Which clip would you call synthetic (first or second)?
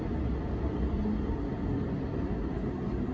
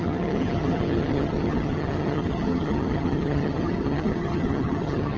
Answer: second